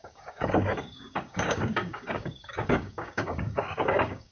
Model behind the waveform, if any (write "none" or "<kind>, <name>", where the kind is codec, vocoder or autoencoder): codec, DAC